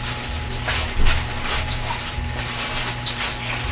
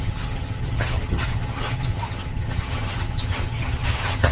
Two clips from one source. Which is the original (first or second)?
first